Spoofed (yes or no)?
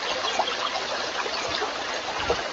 no